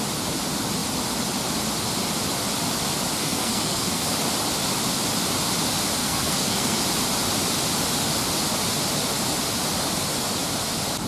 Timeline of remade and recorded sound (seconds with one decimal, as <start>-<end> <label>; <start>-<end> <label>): 0.0-3.2 recorded; 3.2-4.1 remade; 4.1-6.0 recorded; 6.0-6.8 remade; 6.8-11.1 recorded